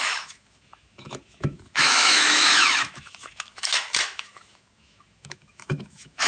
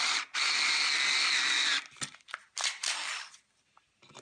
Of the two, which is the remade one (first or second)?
first